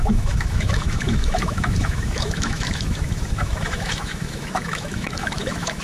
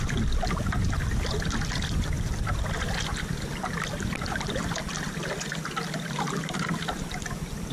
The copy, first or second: first